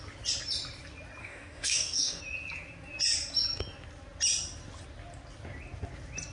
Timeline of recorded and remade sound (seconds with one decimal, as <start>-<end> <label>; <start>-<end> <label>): 0.0-1.2 recorded; 1.2-2.2 remade; 2.2-6.3 recorded